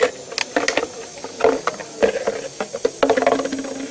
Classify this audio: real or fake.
real